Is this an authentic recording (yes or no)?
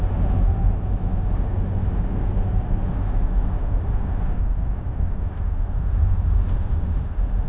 no